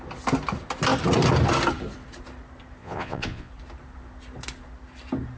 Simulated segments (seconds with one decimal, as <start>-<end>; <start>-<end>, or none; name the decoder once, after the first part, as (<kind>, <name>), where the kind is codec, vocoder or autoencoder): 2.8-3.5 (vocoder, Vocos)

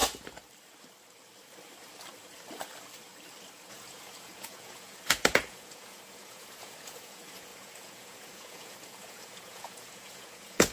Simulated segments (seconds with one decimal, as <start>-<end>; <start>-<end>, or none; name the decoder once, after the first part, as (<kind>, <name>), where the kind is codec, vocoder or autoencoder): 3.7-10.7 (vocoder, Vocos)

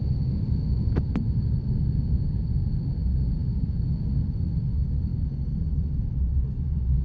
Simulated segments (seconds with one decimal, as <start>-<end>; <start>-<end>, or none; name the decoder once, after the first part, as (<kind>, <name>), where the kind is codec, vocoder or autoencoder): none

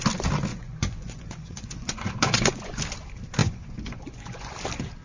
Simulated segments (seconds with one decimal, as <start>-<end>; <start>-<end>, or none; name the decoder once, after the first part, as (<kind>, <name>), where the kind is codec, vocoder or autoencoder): 0.5-2.8 (vocoder, Vocos); 3.4-4.5